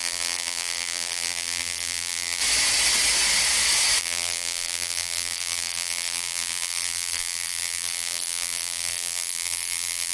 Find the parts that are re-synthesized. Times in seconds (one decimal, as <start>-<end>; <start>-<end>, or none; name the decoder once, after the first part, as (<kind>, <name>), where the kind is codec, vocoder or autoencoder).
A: 0.0-2.4 (vocoder, BigVGAN v2); 4.0-10.1